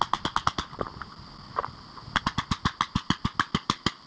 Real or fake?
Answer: real